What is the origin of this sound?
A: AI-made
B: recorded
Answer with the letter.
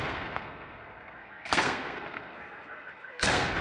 A